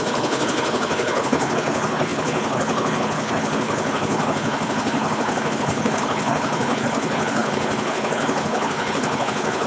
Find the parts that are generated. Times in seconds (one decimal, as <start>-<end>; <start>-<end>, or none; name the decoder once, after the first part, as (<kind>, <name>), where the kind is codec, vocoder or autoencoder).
0.0-9.7 (codec, HILCodec)